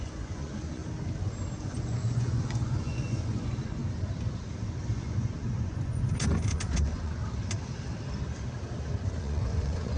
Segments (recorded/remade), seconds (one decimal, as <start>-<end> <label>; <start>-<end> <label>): 0.0-0.8 remade; 0.8-1.6 recorded; 1.6-3.8 remade; 3.8-4.9 recorded; 4.9-7.2 remade; 7.2-9.2 recorded; 9.2-10.0 remade